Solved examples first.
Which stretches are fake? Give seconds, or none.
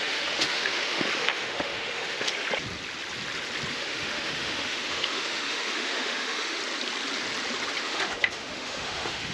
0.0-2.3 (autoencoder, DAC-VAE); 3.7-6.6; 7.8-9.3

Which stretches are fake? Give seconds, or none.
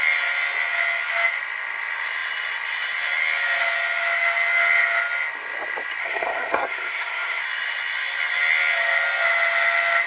6.0-7.4 (codec, SNAC)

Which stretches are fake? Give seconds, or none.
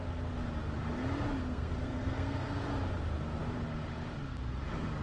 1.4-2.6 (codec, SNAC)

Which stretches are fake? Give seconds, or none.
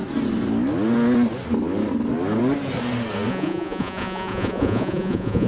3.3-5.5 (vocoder, Vocos)